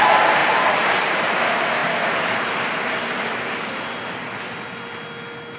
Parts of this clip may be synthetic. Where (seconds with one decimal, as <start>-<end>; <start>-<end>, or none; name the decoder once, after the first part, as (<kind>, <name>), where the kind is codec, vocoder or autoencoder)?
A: 0.4-1.4 (vocoder, BigVGAN v2)

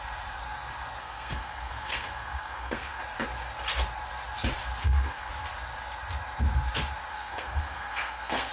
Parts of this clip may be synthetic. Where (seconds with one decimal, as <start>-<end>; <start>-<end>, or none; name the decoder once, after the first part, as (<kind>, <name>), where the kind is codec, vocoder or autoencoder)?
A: 1.0-3.0 (codec, SNAC); 4.8-5.3; 7.1-8.5